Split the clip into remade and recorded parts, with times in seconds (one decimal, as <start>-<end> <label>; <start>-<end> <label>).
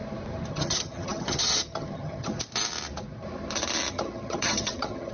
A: 0.0-0.5 recorded; 0.5-2.3 remade; 2.3-3.9 recorded; 3.9-5.1 remade